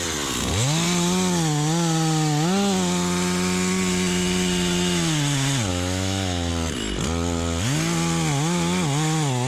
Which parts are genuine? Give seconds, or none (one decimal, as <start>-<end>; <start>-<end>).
0.0-5.7; 6.5-9.5